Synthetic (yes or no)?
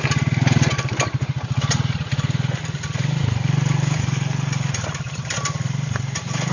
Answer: no